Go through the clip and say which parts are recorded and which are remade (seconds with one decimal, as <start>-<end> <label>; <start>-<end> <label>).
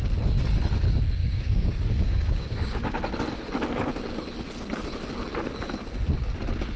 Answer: 0.0-1.2 recorded; 1.2-3.0 remade; 3.0-6.8 recorded